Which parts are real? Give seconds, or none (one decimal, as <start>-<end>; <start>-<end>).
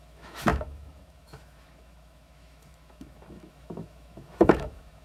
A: none